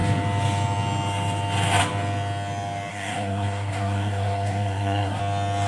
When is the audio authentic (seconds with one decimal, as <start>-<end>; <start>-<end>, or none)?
0.0-2.9; 5.2-5.7